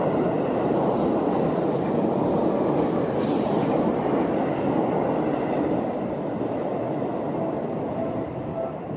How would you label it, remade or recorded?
recorded